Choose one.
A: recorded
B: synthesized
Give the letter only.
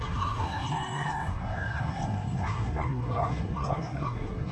B